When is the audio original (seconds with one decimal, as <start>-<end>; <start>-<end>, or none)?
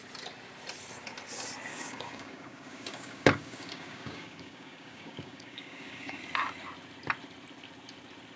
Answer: 0.0-1.7; 6.2-8.4